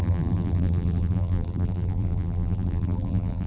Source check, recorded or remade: remade